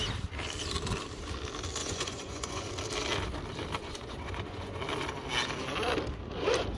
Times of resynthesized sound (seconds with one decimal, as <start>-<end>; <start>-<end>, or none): 1.8-2.7; 3.8-4.8

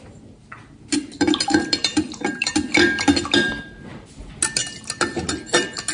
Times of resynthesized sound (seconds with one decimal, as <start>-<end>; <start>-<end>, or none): none

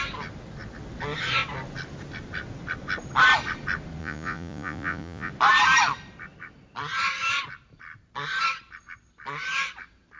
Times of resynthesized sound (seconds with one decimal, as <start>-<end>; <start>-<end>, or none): 4.0-5.3

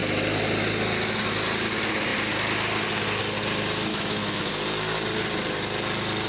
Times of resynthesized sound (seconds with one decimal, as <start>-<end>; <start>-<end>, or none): 3.9-4.5

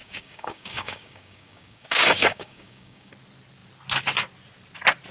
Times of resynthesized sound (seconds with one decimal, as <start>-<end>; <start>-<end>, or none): 0.0-3.1